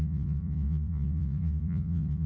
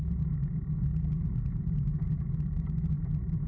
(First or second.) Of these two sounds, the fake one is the first